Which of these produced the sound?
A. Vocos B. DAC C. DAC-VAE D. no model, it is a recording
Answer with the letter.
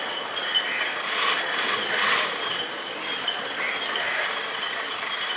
D